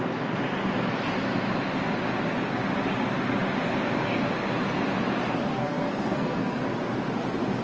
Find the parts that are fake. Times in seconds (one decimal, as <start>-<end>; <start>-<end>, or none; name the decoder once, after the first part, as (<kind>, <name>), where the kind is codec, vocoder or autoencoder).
5.5-6.6 (codec, SNAC)